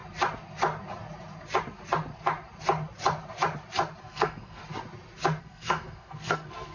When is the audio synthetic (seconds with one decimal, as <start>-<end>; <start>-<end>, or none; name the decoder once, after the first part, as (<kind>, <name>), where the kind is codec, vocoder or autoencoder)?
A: 4.0-4.6 (codec, SNAC); 5.4-6.7